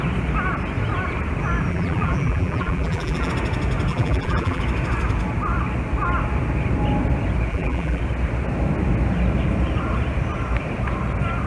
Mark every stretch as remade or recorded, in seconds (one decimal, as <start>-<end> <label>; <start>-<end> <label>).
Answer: 0.0-1.7 recorded; 1.7-3.3 remade; 3.3-3.9 recorded; 3.9-4.6 remade; 4.6-7.5 recorded; 7.5-8.0 remade; 8.0-11.5 recorded